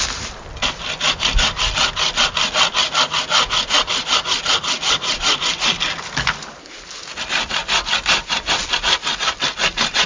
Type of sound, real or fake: real